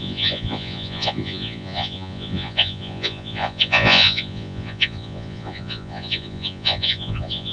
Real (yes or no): no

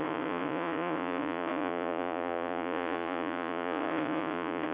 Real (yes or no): no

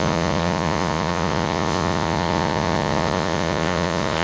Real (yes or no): no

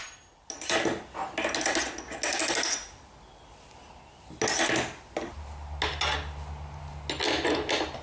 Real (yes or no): yes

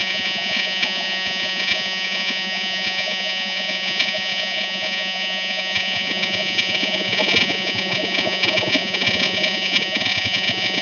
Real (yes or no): no